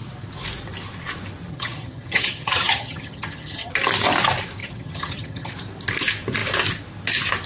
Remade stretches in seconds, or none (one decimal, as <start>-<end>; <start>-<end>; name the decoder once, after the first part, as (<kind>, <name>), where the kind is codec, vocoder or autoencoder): 1.5-3.7 (vocoder, HiFi-GAN); 4.6-5.5